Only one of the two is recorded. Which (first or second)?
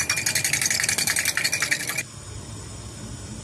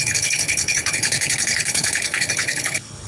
first